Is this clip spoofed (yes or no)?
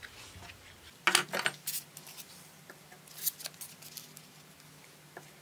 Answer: no